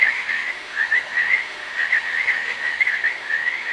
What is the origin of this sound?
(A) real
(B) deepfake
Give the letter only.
B